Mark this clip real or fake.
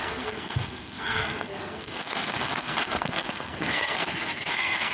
fake